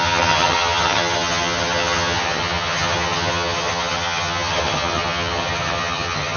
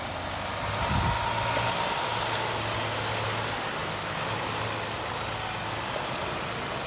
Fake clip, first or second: first